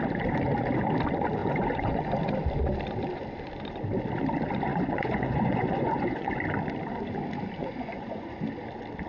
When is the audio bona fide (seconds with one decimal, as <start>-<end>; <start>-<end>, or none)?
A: 0.0-1.4; 2.0-4.7; 6.4-7.6; 8.4-9.1